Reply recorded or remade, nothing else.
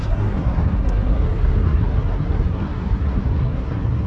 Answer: remade